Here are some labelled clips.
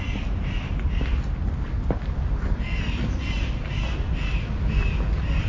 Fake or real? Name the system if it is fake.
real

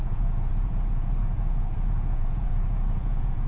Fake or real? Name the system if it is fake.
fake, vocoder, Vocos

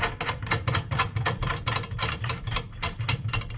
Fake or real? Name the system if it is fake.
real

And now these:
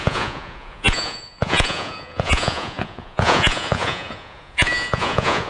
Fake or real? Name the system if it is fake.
fake, vocoder, Vocos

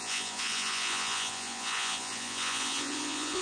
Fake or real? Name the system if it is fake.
fake, vocoder, Vocos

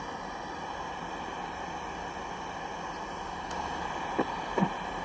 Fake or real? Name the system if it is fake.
real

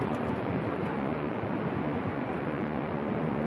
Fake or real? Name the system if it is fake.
fake, vocoder, Vocos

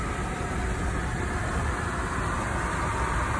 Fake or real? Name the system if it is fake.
real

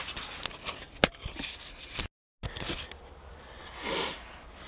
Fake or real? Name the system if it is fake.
real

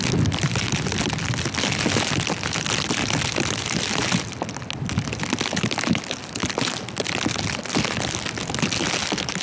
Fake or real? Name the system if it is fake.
real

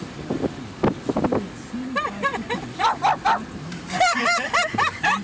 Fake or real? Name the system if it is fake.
real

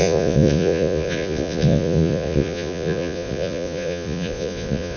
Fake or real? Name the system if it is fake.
fake, vocoder, Vocos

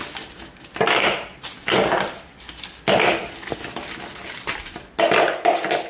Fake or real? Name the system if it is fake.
real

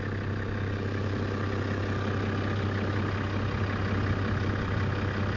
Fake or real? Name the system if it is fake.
real